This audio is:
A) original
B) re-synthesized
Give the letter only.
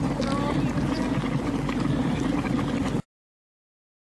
A